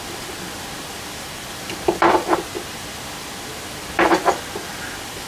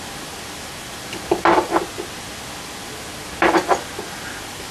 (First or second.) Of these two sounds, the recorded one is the second